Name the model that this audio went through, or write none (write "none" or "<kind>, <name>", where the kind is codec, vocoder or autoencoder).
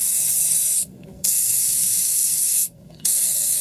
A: codec, SNAC